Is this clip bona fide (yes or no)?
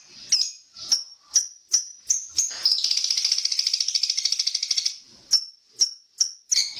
yes